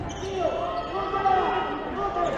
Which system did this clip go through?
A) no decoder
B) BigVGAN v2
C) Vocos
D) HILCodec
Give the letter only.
A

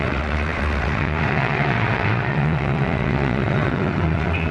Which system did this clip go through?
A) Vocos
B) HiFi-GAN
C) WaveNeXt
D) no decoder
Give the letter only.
C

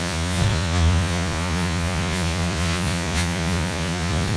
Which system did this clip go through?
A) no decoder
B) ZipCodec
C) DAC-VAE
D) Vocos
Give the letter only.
D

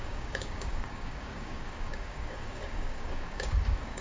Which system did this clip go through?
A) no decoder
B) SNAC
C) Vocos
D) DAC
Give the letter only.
D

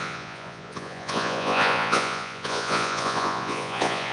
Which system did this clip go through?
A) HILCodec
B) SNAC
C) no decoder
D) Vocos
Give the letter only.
D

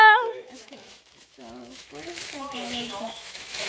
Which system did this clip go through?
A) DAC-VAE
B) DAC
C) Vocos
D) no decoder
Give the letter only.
A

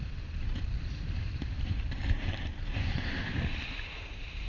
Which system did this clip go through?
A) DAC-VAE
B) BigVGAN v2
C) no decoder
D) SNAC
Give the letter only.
B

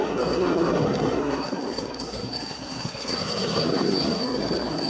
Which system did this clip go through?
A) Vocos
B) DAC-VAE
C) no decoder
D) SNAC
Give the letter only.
D